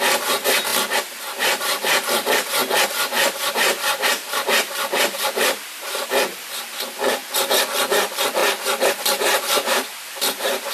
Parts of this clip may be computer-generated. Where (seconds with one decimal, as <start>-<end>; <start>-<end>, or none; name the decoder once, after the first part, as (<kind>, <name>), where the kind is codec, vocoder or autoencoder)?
0.0-0.7 (vocoder, BigVGAN v2); 1.2-2.6; 3.5-7.2; 7.8-8.4; 8.9-10.7